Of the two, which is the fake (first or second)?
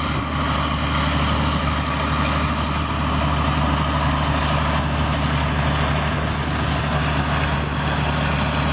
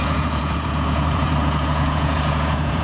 second